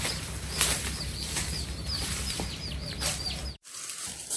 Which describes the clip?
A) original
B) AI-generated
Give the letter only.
B